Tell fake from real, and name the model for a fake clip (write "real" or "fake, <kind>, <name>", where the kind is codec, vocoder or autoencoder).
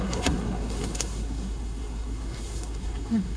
fake, codec, SNAC